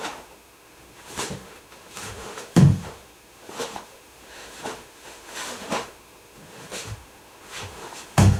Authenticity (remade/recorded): remade